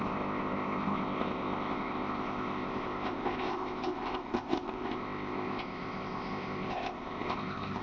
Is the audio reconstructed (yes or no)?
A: yes